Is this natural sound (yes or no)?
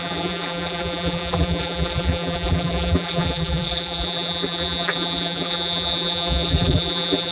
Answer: no